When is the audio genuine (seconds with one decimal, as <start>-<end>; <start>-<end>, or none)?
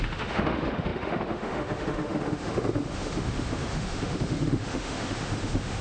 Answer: none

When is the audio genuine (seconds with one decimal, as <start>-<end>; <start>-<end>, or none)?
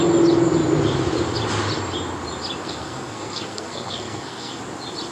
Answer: 0.0-2.6; 4.6-5.1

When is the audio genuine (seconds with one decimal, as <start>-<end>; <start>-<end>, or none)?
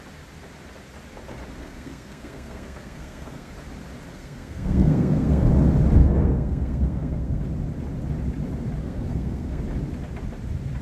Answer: 0.0-1.6; 3.5-4.1; 5.5-6.0; 7.4-8.8; 9.6-10.8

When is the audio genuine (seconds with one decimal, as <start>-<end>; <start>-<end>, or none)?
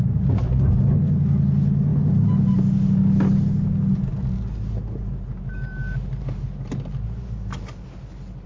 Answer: 0.0-8.5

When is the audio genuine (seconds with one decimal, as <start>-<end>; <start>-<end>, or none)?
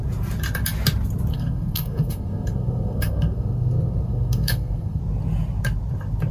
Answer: 0.0-1.3; 5.0-6.3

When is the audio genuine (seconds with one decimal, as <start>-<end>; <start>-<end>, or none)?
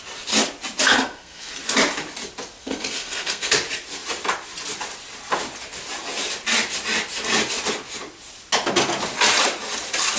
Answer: 0.0-0.8; 1.5-2.6; 3.5-10.2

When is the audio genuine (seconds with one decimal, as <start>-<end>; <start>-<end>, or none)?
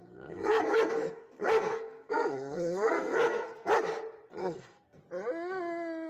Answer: 3.7-4.4; 5.0-6.1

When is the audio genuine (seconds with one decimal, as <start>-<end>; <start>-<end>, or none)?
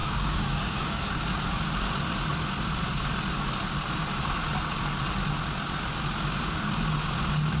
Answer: 1.2-7.6